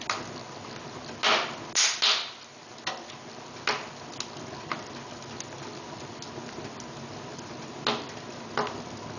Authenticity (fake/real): real